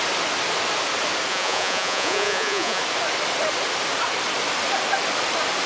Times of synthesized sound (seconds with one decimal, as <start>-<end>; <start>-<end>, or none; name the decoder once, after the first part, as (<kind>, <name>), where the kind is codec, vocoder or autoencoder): 1.3-2.8 (vocoder, Vocos)